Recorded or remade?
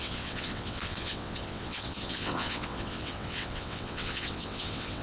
remade